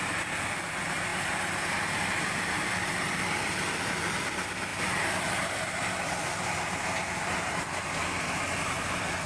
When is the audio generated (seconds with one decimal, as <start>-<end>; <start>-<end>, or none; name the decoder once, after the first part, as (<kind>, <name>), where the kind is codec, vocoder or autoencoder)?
none